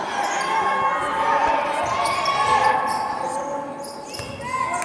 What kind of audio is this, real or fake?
real